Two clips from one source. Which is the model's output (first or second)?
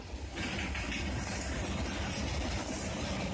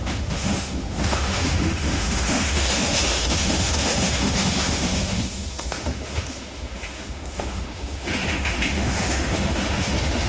second